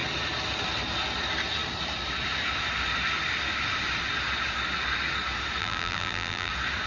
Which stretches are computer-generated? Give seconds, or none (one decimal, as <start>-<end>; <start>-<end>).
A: 5.6-6.5